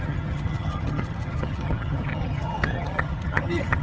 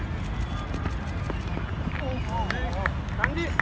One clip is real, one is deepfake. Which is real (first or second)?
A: second